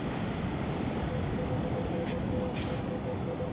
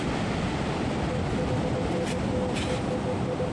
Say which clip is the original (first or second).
second